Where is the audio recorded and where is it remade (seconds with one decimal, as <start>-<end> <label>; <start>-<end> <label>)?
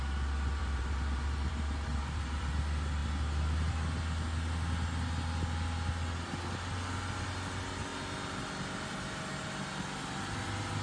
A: 0.0-0.6 recorded; 0.6-2.5 remade; 2.5-10.8 recorded